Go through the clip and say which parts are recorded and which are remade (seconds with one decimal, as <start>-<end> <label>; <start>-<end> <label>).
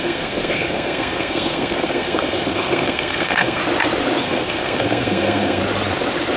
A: 0.0-3.6 remade; 3.6-4.2 recorded; 4.2-5.6 remade; 5.6-6.4 recorded